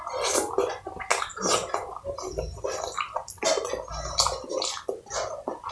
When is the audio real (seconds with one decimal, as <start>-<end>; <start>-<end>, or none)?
0.0-5.7

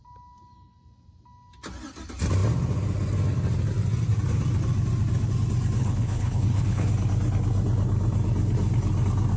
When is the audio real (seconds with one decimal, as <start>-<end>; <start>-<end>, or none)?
0.0-5.8; 6.9-9.4

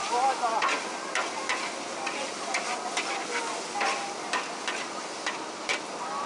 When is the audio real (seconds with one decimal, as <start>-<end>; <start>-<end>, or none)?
0.0-6.3